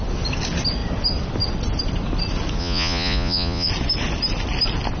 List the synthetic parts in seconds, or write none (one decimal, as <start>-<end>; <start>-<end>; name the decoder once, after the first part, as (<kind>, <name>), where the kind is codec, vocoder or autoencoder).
2.6-3.7 (vocoder, Vocos)